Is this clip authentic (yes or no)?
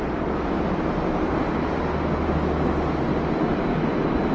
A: yes